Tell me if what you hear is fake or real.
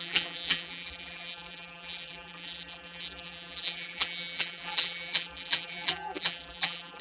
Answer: fake